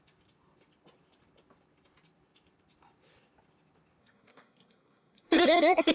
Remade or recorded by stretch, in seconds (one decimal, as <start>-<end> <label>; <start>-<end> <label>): 0.0-4.0 recorded; 4.0-5.9 remade